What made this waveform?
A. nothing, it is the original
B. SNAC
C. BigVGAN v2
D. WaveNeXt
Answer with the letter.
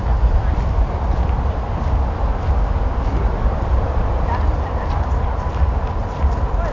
A